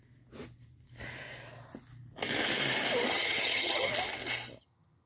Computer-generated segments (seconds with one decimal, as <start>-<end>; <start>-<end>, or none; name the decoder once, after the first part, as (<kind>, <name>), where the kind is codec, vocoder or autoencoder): 3.1-3.9 (vocoder, HiFi-GAN); 4.6-5.1